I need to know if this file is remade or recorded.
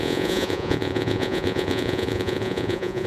remade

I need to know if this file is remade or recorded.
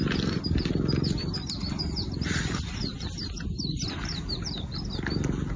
recorded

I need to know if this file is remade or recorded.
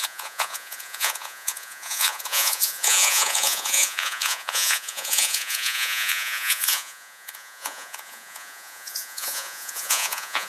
remade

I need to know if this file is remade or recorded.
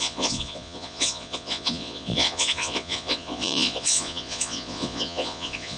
remade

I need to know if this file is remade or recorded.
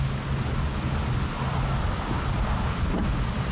recorded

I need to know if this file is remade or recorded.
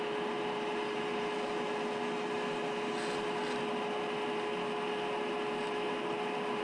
recorded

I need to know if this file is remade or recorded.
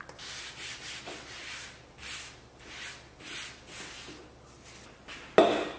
recorded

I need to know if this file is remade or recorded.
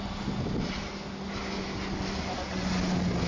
recorded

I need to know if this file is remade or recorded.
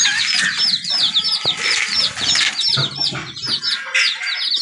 recorded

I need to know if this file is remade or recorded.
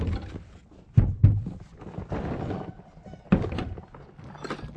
recorded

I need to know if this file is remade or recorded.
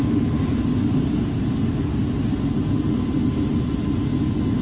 recorded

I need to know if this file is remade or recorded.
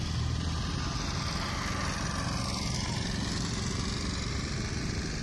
recorded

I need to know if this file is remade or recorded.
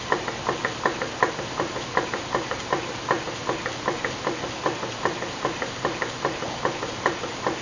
recorded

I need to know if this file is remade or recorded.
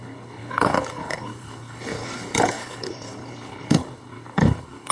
remade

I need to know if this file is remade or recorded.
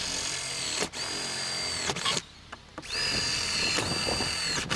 recorded